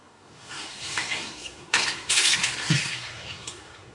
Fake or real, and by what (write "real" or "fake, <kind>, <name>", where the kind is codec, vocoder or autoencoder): fake, codec, SNAC